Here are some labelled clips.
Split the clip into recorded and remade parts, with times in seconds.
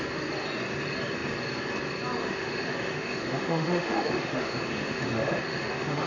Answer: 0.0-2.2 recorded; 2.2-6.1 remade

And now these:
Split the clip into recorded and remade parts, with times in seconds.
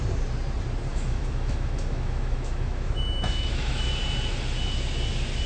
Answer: 0.0-0.9 recorded; 0.9-3.9 remade; 3.9-5.5 recorded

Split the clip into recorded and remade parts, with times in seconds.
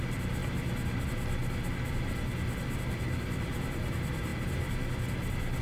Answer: 0.0-0.4 remade; 0.4-3.0 recorded; 3.0-5.6 remade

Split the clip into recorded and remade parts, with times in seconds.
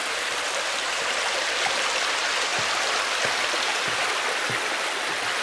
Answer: 0.0-1.5 remade; 1.5-2.5 recorded; 2.5-5.0 remade; 5.0-5.4 recorded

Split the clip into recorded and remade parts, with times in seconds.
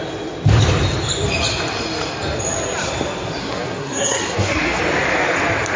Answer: 0.0-3.4 recorded; 3.4-4.8 remade; 4.8-5.8 recorded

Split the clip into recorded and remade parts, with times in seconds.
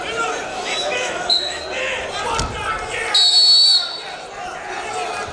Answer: 0.0-0.5 recorded; 0.5-1.6 remade; 1.6-5.3 recorded